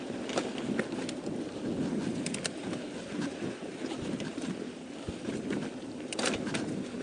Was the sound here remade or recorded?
remade